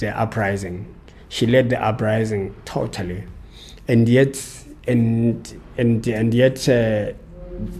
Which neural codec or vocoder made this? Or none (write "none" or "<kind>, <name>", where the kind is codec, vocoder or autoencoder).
none